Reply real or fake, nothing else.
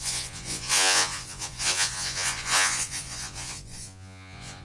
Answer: fake